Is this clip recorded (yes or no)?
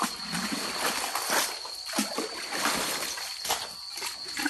yes